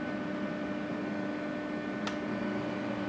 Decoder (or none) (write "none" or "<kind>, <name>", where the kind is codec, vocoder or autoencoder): none